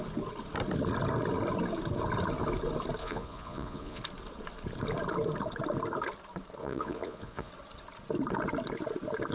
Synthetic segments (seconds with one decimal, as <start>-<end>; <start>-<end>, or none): 3.0-4.0; 6.6-7.5